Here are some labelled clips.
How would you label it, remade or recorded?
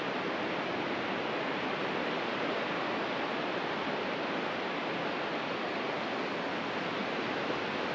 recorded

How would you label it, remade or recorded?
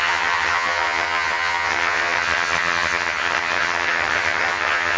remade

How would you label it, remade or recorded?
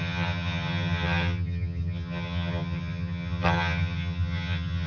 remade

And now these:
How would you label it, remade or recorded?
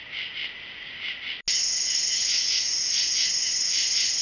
recorded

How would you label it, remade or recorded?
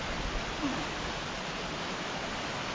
recorded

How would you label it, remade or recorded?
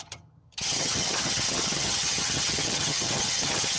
remade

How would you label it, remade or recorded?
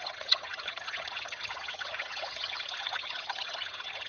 remade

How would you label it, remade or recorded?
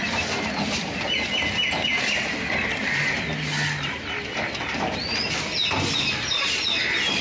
recorded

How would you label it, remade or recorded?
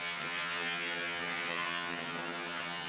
remade